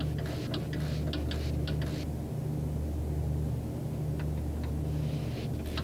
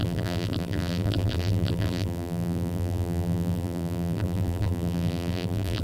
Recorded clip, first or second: first